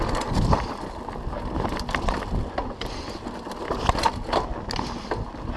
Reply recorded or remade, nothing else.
recorded